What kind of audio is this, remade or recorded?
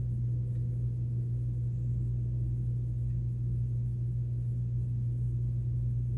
recorded